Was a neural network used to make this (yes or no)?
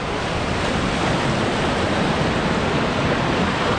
no